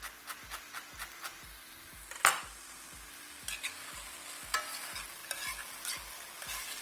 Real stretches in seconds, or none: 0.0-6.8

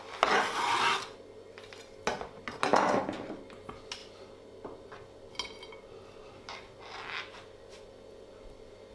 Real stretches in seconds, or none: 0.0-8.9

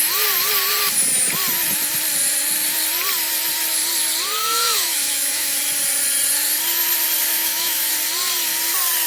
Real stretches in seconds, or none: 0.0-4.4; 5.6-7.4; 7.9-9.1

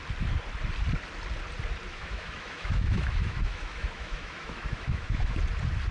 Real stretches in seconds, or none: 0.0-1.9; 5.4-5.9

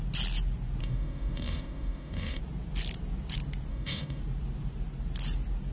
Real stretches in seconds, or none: 0.0-0.8; 2.4-3.7; 4.2-5.7

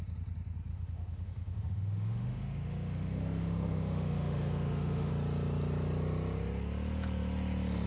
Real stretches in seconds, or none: 0.0-0.7; 5.1-7.9

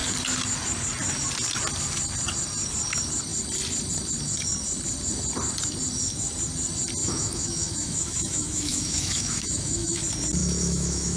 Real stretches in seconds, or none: 0.0-7.0; 10.0-10.4

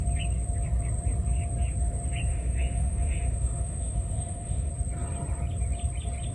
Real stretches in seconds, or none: 0.0-2.3; 4.7-6.3